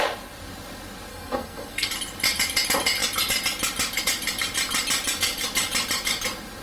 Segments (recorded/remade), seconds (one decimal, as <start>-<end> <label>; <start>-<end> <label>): 0.0-1.1 recorded; 1.1-1.9 remade; 1.9-6.6 recorded